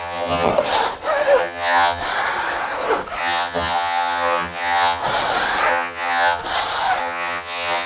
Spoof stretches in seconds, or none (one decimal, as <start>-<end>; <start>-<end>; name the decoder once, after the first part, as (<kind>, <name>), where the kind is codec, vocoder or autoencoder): 0.0-0.5 (vocoder, HiFi-GAN); 1.4-2.0; 3.2-5.0; 5.7-6.4; 7.0-7.9